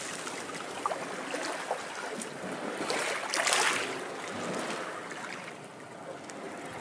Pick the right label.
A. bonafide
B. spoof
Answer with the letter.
A